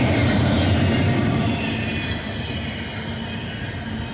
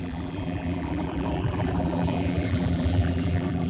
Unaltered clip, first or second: first